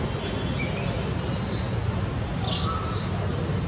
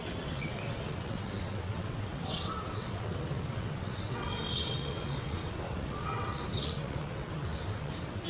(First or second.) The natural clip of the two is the first